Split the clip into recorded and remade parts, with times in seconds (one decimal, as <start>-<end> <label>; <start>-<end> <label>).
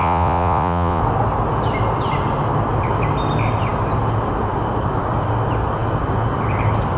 0.0-1.0 remade; 1.0-7.0 recorded